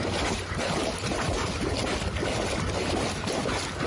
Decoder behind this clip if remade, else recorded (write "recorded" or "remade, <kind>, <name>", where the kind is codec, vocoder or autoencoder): recorded